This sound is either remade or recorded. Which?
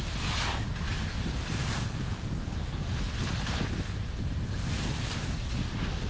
recorded